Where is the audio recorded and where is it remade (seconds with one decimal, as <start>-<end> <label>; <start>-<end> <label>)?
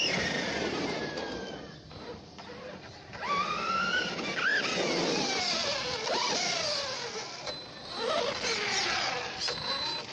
0.0-10.1 recorded